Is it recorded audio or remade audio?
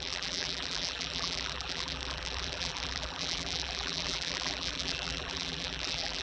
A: remade